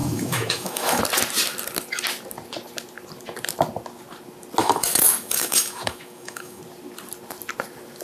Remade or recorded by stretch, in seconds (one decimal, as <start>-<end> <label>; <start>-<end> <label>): 0.0-1.0 remade; 1.0-4.6 recorded; 4.6-6.6 remade; 6.6-8.0 recorded